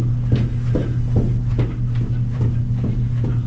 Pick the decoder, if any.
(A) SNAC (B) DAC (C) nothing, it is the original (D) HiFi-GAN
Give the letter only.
C